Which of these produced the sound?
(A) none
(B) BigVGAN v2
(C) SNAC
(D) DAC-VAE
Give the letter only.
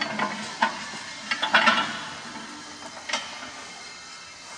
A